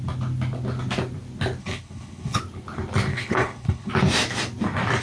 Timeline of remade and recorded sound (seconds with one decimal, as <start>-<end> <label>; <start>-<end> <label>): 0.0-1.6 recorded; 1.6-2.4 remade; 2.4-3.1 recorded; 3.1-3.9 remade; 3.9-5.0 recorded